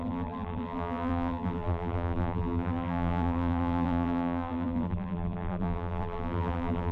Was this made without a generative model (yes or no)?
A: no